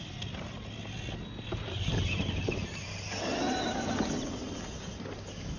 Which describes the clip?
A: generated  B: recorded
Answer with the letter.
B